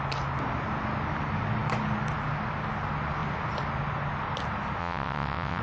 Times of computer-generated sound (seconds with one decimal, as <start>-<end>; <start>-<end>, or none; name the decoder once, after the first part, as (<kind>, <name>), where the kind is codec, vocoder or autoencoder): 4.8-5.6 (vocoder, WaveNeXt)